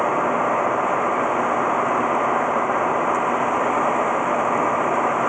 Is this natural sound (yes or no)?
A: yes